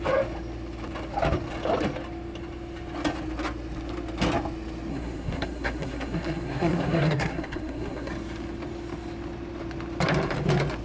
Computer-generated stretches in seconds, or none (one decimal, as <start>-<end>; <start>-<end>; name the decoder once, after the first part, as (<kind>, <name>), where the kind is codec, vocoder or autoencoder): 4.9-8.1 (codec, SNAC)